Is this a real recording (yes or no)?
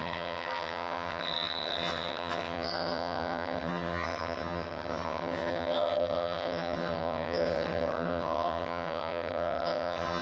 no